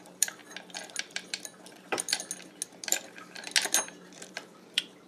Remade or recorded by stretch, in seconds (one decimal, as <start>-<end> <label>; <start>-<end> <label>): 0.0-0.4 remade; 0.4-1.0 recorded; 1.0-2.1 remade; 2.1-3.8 recorded; 3.8-5.1 remade